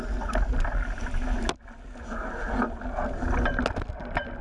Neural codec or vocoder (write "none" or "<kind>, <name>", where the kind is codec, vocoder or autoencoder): none